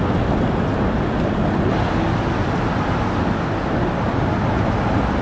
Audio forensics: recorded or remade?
recorded